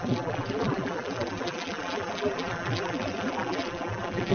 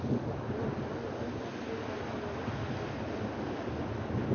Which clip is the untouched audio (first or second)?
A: second